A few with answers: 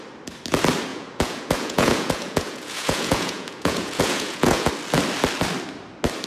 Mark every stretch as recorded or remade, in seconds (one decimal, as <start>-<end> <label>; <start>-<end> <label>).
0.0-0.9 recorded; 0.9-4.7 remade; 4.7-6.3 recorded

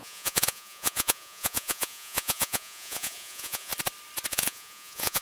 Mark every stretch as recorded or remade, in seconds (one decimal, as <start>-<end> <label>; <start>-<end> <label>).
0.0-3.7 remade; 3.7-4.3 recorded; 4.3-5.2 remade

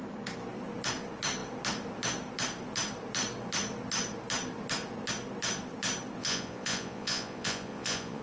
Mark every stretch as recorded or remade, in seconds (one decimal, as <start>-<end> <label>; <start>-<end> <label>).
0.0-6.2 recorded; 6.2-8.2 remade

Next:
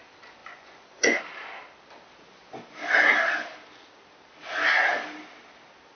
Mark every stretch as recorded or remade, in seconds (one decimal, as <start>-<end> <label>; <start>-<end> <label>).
0.0-0.4 recorded; 0.4-1.2 remade; 1.2-6.0 recorded